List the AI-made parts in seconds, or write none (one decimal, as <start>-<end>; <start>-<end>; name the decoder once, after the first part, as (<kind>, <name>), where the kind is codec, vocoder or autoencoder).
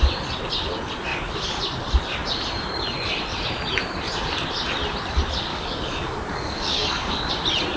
1.1-1.6 (codec, DAC); 5.5-7.3